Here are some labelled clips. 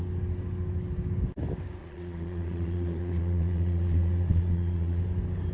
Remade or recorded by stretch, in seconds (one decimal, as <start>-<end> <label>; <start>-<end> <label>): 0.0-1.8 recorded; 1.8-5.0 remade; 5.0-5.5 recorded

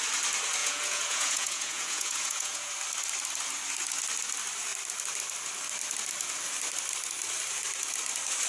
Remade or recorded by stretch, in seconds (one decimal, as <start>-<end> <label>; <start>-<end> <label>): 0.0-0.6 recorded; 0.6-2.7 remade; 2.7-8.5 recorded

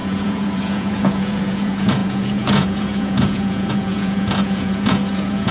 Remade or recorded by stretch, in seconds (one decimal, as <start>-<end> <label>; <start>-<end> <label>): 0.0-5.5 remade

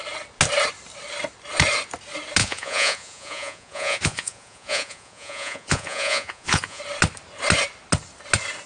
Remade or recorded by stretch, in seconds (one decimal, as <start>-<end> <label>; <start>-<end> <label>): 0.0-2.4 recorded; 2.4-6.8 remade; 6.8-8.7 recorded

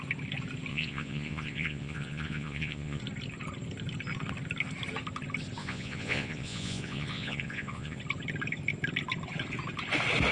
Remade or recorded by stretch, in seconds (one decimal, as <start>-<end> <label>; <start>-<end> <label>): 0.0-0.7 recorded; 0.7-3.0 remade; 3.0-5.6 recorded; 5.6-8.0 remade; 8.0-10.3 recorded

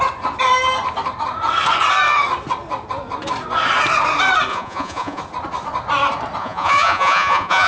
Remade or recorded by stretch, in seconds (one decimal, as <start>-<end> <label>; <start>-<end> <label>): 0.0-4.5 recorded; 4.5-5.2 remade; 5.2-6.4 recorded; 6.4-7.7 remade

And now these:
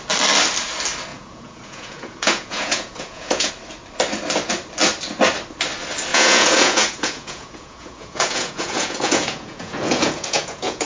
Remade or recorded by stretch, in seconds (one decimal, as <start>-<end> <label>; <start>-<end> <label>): 0.0-1.1 recorded; 1.1-3.5 remade; 3.5-6.1 recorded; 6.1-10.9 remade